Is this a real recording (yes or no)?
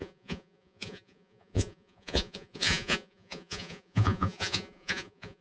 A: no